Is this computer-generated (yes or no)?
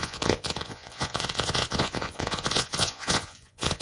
yes